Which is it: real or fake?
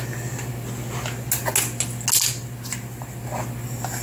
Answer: real